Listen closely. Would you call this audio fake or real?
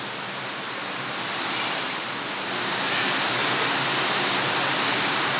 real